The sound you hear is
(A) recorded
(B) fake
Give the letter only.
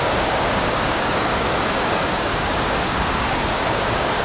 B